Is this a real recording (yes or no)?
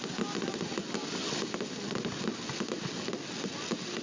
yes